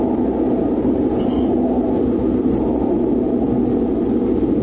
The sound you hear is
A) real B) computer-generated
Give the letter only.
A